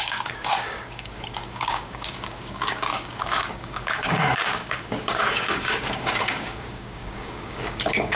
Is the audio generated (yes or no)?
yes